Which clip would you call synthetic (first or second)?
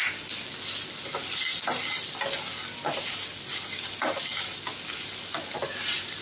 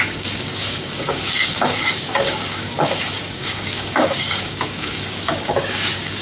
second